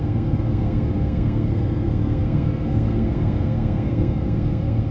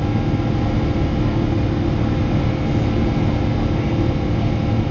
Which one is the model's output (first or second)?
first